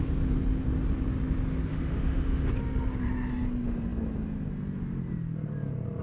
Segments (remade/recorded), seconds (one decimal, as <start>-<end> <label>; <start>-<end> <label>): 0.0-1.7 recorded; 1.7-2.5 remade; 2.5-6.0 recorded